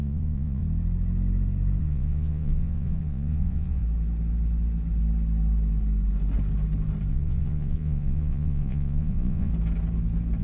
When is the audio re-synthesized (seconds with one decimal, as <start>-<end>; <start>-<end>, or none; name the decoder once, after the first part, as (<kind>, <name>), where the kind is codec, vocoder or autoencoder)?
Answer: 0.0-0.6 (vocoder, Vocos); 1.8-3.8; 7.1-9.5